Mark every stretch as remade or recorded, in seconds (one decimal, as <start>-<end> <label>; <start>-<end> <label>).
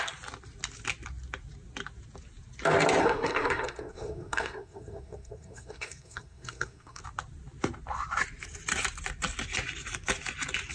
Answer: 0.0-3.0 recorded; 3.0-7.0 remade; 7.0-10.7 recorded